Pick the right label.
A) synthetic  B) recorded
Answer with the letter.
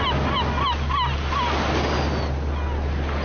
B